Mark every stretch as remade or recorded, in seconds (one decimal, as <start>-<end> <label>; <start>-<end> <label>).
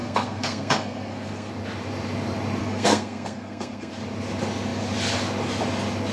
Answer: 0.0-1.5 remade; 1.5-2.6 recorded; 2.6-3.9 remade; 3.9-6.1 recorded